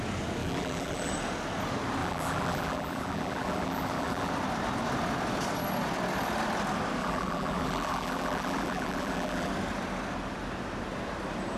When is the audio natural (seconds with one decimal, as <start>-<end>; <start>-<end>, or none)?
0.0-0.4; 1.1-2.0; 4.3-7.0; 9.5-11.6